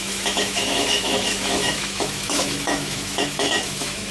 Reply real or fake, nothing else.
fake